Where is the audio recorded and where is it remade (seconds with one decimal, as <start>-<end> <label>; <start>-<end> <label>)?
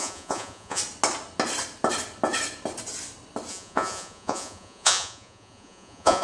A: 0.0-0.8 remade; 0.8-3.5 recorded; 3.5-6.2 remade